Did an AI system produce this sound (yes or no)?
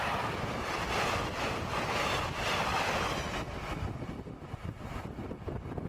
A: no